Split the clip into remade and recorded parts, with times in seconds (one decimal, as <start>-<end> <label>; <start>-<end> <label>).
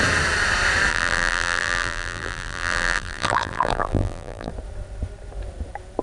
0.0-0.9 recorded; 0.9-4.5 remade; 4.5-6.0 recorded